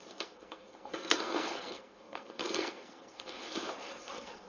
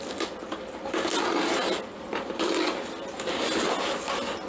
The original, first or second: second